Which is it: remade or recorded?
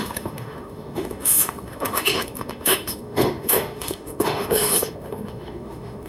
remade